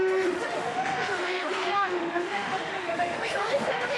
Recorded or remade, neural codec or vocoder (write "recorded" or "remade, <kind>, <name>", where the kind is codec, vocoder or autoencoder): remade, autoencoder, DAC-VAE